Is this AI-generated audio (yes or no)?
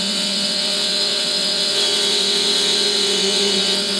yes